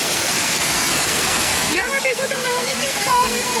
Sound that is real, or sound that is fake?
fake